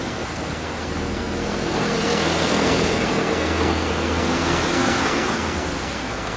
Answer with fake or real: fake